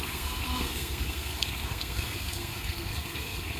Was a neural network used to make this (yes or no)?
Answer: yes